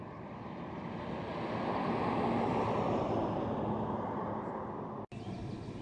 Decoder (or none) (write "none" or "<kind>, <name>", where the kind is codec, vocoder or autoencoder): none